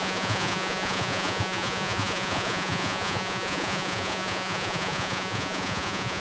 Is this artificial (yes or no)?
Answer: yes